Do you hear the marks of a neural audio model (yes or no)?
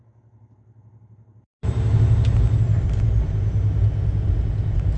no